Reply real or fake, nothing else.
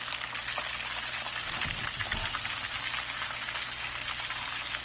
real